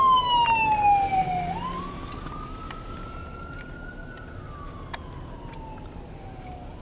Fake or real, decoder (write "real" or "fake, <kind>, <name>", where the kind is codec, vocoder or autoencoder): real